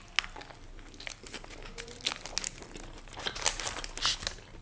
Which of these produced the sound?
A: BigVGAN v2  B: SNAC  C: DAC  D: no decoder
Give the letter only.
D